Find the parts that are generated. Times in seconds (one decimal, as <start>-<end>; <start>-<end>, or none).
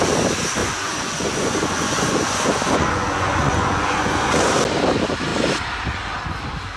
0.6-4.5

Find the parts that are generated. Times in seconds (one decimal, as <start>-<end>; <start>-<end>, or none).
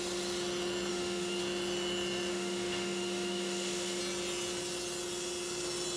0.9-1.4; 2.3-4.0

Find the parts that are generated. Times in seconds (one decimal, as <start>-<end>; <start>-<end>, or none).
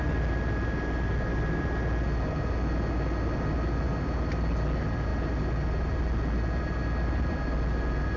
none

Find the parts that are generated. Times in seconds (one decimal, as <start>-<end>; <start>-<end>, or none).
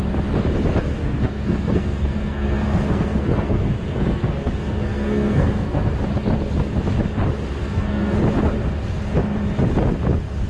1.0-5.9; 7.6-8.2